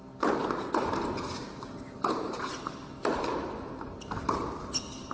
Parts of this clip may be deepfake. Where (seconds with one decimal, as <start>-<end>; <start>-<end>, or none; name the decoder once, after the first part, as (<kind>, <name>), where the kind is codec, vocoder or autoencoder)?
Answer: none